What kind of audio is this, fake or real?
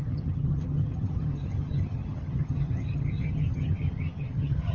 fake